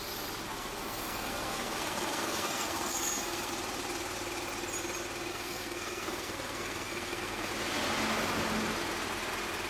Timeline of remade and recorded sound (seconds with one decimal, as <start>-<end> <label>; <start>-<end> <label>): 0.0-0.5 recorded; 0.5-3.5 remade; 3.5-5.3 recorded; 5.3-7.5 remade; 7.5-9.7 recorded

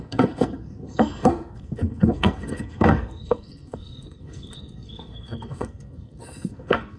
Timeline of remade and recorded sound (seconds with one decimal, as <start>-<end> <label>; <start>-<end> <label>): 0.0-7.0 remade